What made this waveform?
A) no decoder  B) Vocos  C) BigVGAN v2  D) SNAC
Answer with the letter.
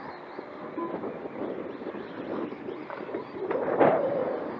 A